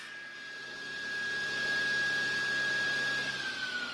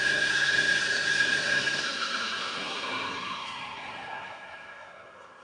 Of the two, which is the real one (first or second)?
first